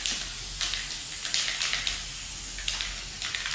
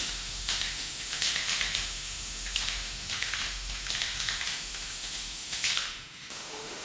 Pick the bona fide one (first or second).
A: first